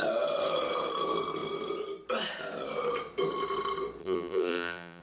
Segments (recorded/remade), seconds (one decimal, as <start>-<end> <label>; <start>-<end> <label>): 0.0-4.0 recorded; 4.0-5.0 remade